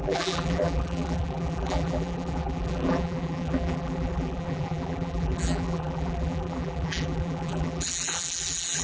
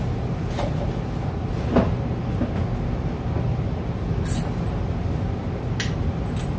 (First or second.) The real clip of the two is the second